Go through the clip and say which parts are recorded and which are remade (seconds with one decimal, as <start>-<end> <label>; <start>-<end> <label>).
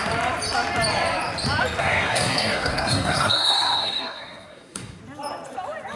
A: 0.0-1.8 recorded; 1.8-5.0 remade; 5.0-6.0 recorded